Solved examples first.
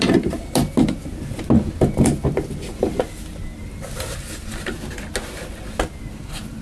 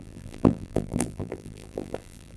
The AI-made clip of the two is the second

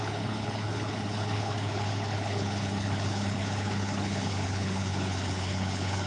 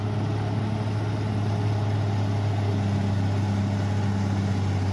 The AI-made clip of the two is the first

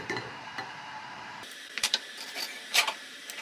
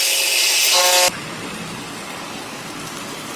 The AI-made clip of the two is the first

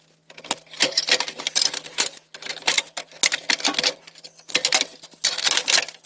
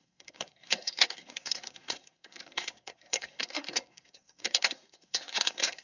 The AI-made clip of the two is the second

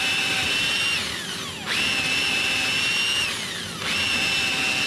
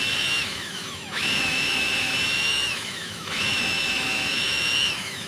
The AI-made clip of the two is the second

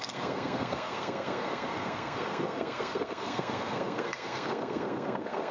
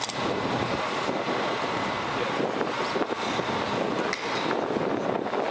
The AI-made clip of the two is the first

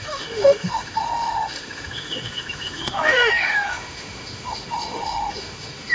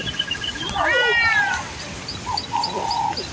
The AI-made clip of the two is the first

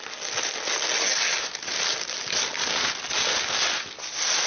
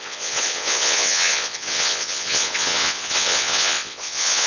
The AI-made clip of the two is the second